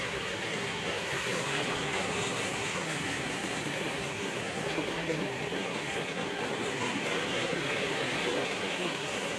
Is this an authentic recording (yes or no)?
no